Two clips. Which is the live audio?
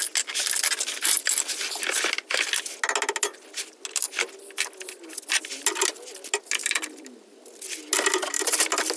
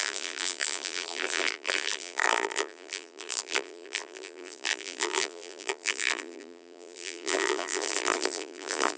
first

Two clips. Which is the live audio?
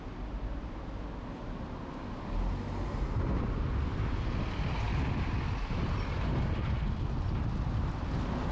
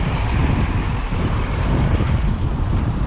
first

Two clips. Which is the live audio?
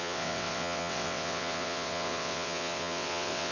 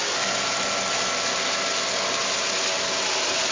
second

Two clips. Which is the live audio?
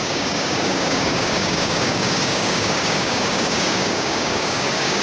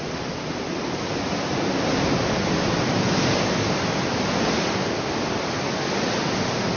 second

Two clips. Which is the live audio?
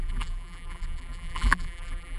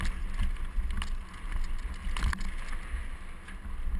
second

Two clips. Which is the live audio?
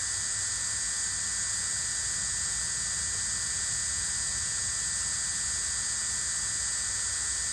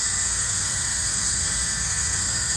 first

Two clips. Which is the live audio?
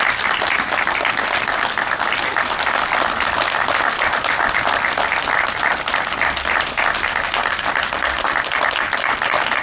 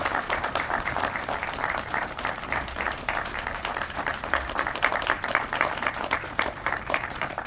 first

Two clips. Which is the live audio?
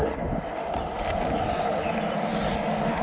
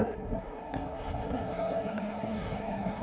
first